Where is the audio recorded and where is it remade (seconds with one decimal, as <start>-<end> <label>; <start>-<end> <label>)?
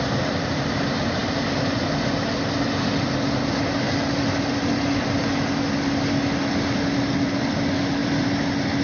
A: 0.0-8.8 recorded